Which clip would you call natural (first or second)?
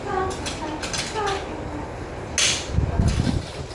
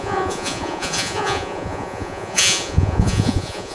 first